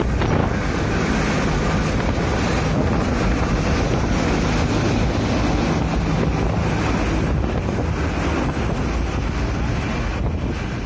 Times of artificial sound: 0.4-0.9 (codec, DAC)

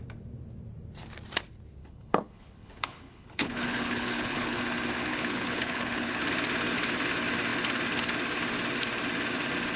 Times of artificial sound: 1.8-4.6 (codec, HILCodec); 5.1-6.2

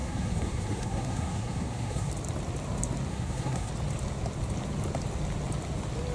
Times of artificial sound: 0.0-2.1 (codec, SNAC); 3.1-3.7